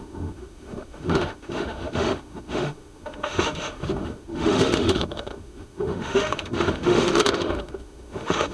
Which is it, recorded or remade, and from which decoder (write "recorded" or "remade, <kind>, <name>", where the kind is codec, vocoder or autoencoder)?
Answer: remade, autoencoder, DAC-VAE